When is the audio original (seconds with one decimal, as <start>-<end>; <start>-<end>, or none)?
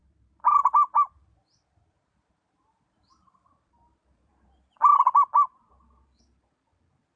4.3-7.2